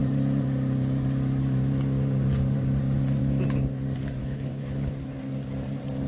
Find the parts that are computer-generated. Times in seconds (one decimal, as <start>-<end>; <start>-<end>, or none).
4.2-4.9